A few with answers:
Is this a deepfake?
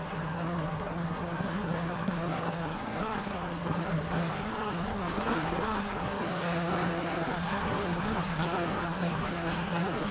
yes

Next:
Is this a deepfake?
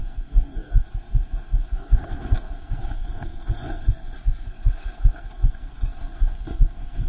yes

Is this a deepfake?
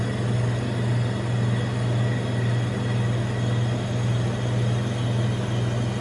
no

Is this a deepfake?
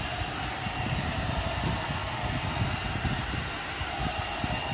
no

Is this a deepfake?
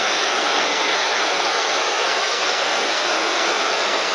yes